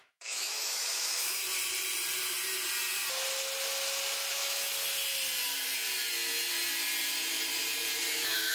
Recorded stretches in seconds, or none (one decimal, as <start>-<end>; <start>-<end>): 1.4-4.3; 4.7-8.1